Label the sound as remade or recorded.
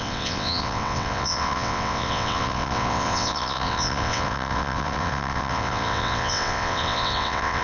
remade